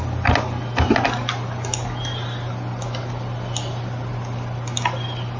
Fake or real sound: real